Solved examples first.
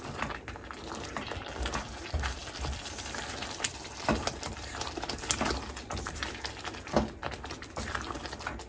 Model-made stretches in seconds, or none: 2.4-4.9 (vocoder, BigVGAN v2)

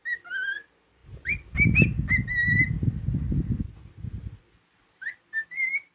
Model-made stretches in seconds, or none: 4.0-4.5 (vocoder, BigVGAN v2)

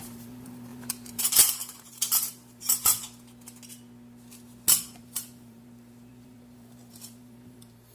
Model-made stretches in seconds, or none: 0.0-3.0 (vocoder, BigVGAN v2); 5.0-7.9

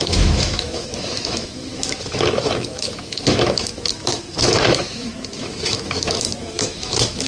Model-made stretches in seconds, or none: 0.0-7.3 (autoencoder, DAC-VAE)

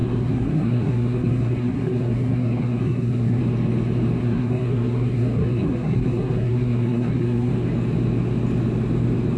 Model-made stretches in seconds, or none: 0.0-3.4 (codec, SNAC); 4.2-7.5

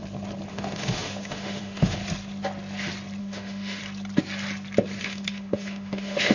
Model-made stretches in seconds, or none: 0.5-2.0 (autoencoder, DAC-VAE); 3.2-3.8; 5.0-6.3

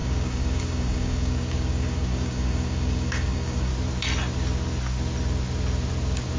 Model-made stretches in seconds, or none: 0.0-3.7 (codec, DAC)